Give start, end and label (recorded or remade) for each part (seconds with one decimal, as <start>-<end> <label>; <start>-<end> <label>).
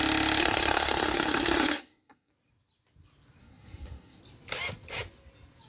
0.0-0.4 recorded; 0.4-2.3 remade; 2.3-3.4 recorded; 3.4-4.2 remade; 4.2-5.7 recorded